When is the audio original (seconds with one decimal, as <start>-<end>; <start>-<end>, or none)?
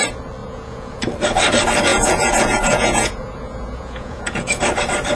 0.0-0.4; 1.0-1.9; 4.6-5.2